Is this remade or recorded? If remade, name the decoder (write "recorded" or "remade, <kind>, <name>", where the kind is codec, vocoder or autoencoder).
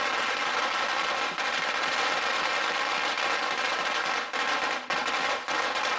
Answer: recorded